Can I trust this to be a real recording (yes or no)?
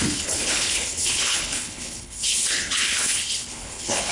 no